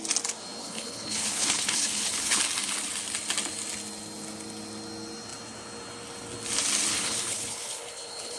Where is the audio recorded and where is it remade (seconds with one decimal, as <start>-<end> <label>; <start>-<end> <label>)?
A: 0.0-0.6 recorded; 0.6-2.4 remade; 2.4-6.9 recorded; 6.9-8.4 remade